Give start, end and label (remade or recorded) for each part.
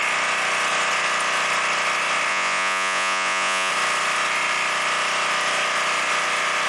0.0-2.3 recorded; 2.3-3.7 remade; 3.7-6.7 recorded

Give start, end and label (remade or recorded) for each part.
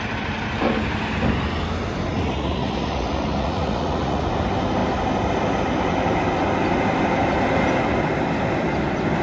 0.0-2.1 recorded; 2.1-4.2 remade; 4.2-9.2 recorded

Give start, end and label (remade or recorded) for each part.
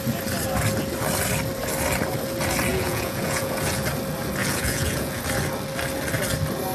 0.0-2.7 recorded; 2.7-3.8 remade; 3.8-4.4 recorded; 4.4-5.2 remade; 5.2-6.7 recorded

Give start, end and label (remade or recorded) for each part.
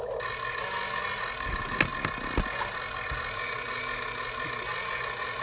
0.0-5.4 recorded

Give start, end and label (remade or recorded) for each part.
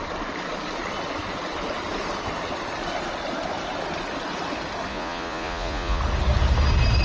0.0-4.9 recorded; 4.9-6.0 remade; 6.0-7.0 recorded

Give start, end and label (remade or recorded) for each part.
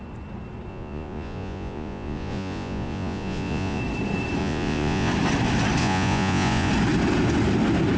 0.0-0.7 recorded; 0.7-3.8 remade; 3.8-4.4 recorded; 4.4-5.1 remade; 5.1-5.8 recorded; 5.8-6.7 remade; 6.7-8.0 recorded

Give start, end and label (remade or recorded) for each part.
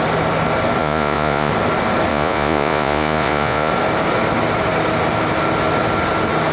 0.0-0.8 recorded; 0.8-1.5 remade; 1.5-2.1 recorded; 2.1-3.7 remade; 3.7-6.5 recorded